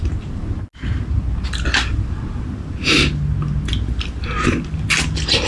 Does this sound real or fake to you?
real